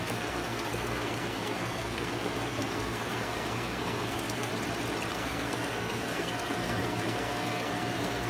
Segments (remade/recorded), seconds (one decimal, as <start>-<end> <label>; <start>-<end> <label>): 0.0-4.5 remade; 4.5-5.1 recorded; 5.1-8.3 remade